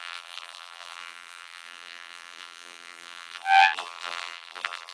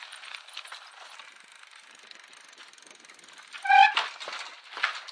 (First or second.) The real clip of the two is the second